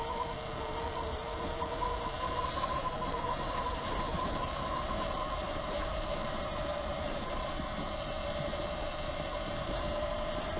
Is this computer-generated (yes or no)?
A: yes